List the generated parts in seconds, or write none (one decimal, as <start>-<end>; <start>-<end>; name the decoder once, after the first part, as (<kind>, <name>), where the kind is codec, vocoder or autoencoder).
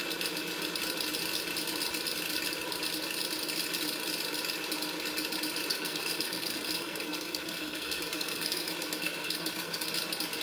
5.7-9.9 (codec, SNAC)